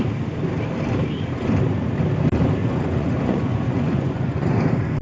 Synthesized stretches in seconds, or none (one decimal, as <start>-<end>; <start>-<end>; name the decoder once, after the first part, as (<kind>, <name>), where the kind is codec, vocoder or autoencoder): 2.6-4.6 (vocoder, Vocos)